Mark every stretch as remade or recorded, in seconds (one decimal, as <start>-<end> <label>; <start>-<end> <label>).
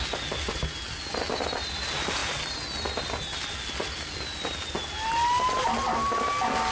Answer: 0.0-6.7 recorded